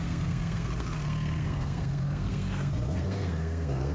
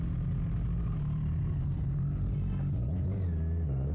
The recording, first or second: second